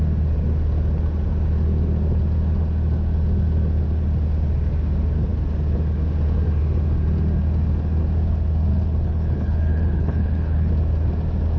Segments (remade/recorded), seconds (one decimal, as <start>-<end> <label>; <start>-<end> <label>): 0.0-8.7 recorded; 8.7-10.7 remade; 10.7-11.6 recorded